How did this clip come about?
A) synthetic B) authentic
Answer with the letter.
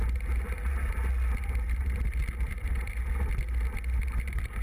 B